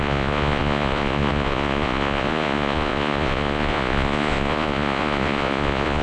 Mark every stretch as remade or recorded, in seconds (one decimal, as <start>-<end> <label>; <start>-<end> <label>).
0.0-6.0 remade